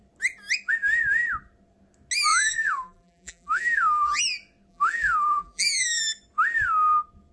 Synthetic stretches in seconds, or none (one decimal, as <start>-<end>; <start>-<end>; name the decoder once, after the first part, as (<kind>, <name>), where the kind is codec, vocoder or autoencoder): 2.3-4.2 (vocoder, BigVGAN v2); 4.7-6.0